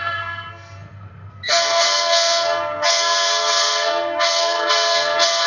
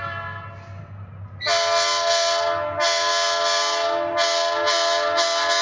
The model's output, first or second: first